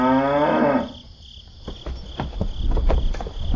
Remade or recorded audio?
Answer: recorded